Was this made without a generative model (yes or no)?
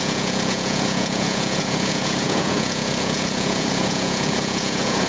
no